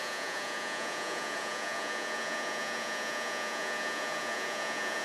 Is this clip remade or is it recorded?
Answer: remade